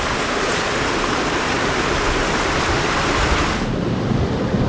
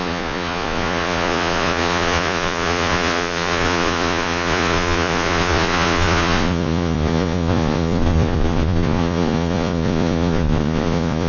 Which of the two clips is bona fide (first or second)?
first